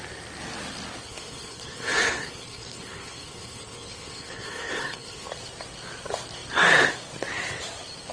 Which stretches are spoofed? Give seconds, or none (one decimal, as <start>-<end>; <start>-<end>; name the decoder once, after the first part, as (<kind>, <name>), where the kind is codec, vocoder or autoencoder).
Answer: 1.1-5.3 (codec, HILCodec)